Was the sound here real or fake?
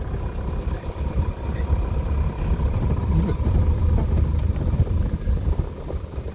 fake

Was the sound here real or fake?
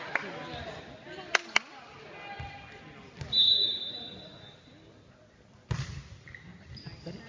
real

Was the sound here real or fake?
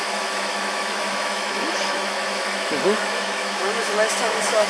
fake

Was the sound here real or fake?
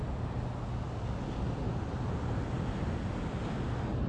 real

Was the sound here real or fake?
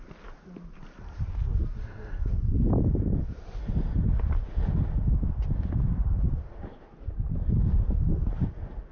real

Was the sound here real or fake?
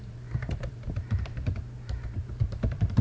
fake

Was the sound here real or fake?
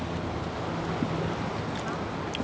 real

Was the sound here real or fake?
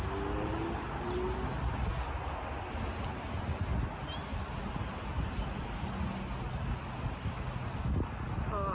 real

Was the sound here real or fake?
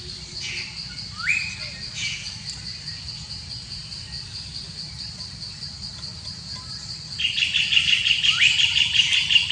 real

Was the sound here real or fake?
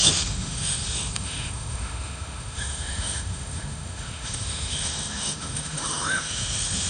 fake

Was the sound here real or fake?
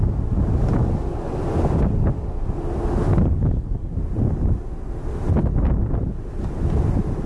real